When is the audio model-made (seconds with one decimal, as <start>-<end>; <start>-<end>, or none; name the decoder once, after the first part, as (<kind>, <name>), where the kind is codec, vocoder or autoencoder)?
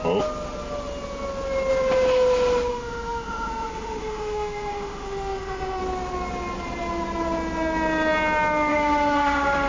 2.7-5.8 (autoencoder, DAC-VAE); 8.7-9.7